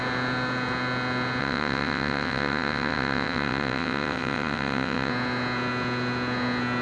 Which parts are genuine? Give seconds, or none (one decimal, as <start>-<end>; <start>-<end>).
0.0-1.4; 5.1-6.8